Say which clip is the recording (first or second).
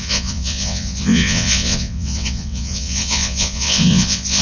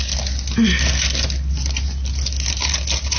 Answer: second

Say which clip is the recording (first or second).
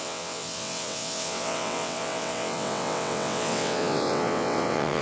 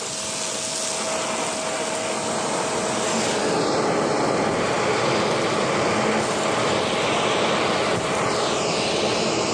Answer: second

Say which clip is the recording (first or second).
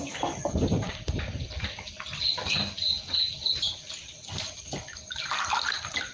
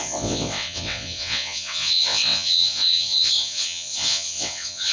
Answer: first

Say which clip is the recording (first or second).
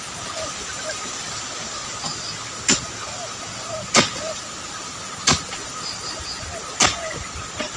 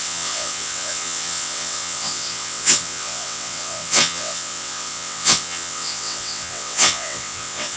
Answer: first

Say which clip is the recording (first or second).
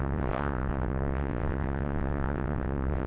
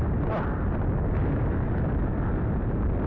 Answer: second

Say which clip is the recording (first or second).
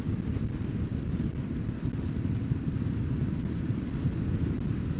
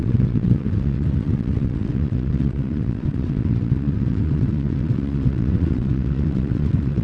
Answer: first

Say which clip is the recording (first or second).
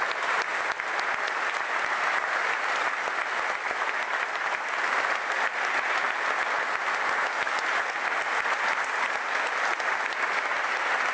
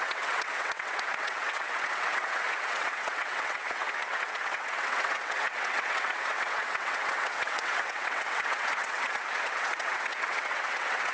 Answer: first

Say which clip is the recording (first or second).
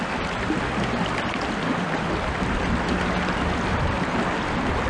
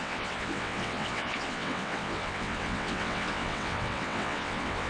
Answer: first